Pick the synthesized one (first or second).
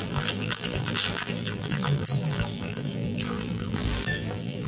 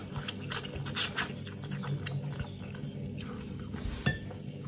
first